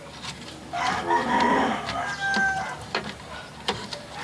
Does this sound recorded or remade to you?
recorded